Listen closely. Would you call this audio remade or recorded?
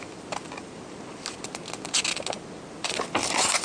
recorded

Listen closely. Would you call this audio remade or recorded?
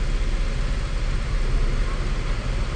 recorded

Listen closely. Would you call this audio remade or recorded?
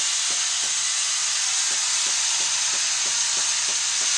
recorded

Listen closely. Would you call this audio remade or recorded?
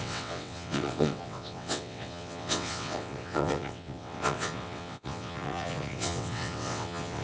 remade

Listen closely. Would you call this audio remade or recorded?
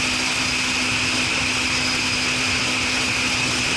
recorded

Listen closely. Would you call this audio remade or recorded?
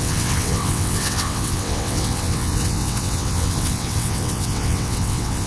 remade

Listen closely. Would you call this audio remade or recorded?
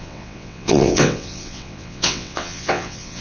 remade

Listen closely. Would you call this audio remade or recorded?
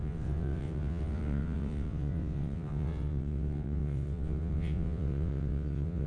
remade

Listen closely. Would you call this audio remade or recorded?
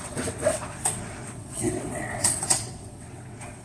remade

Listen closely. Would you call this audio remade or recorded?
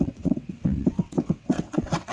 remade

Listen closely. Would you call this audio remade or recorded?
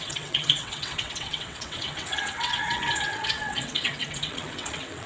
remade